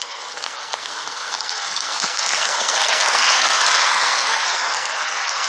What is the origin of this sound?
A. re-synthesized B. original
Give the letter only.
A